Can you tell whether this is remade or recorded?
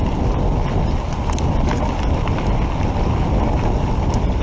recorded